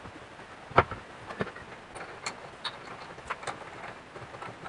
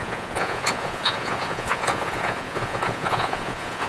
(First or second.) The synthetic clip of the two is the second